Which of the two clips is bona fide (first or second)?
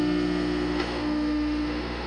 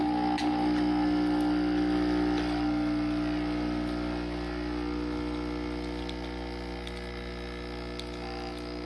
second